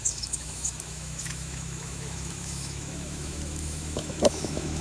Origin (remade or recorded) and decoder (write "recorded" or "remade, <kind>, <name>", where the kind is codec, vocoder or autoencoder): remade, autoencoder, DAC-VAE